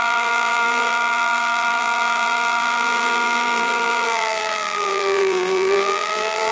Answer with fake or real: fake